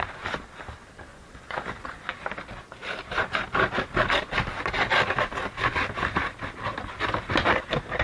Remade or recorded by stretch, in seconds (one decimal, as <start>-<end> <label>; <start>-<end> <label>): 0.0-1.1 recorded; 1.1-2.1 remade; 2.1-8.0 recorded

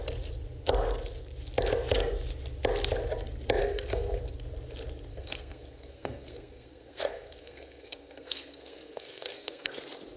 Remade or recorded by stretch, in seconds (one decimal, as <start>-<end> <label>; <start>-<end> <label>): 0.0-3.6 recorded; 3.6-4.2 remade; 4.2-5.1 recorded; 5.1-9.7 remade; 9.7-10.2 recorded

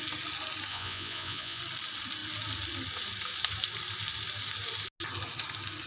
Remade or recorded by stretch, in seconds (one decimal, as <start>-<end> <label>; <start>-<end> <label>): 0.0-0.7 recorded; 0.7-1.6 remade; 1.6-5.9 recorded